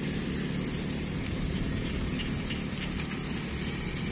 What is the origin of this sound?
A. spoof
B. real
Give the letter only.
B